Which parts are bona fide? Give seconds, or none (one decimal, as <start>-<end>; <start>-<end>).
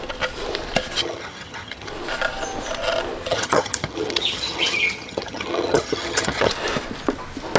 0.0-1.0; 1.9-3.3; 6.5-7.6